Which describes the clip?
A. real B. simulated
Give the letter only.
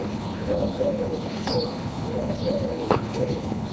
B